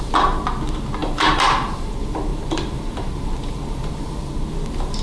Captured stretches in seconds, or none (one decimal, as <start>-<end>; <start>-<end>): 0.0-1.0; 1.9-2.3; 3.9-5.0